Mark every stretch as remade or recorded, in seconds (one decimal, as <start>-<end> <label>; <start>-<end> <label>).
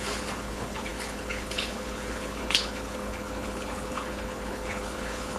0.0-5.4 remade